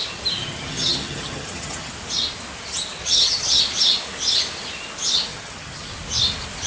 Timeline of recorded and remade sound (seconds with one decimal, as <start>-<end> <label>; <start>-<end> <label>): 0.0-0.4 recorded; 0.4-1.9 remade; 1.9-3.0 recorded; 3.0-3.6 remade; 3.6-5.3 recorded; 5.3-5.9 remade; 5.9-6.7 recorded